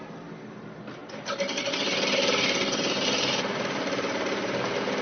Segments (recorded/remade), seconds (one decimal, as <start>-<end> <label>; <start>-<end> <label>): 0.0-5.0 recorded